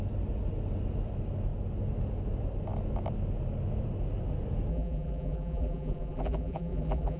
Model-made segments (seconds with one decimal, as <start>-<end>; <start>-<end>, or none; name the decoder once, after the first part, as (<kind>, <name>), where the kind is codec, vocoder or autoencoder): 4.7-7.2 (vocoder, BigVGAN v2)